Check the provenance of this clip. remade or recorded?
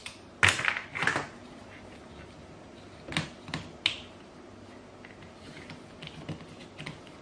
recorded